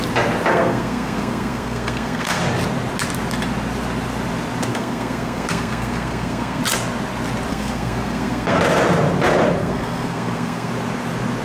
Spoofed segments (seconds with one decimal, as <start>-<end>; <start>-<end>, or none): 0.5-2.4; 4.7-6.6; 7.5-8.6; 9.6-10.7